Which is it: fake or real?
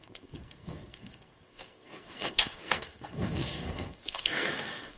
fake